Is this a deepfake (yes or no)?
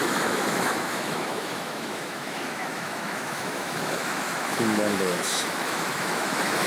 yes